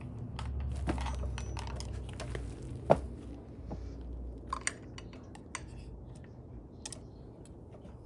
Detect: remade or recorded recorded